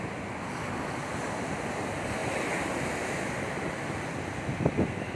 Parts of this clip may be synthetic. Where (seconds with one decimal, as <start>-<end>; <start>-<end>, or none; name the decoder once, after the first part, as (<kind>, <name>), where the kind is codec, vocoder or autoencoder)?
none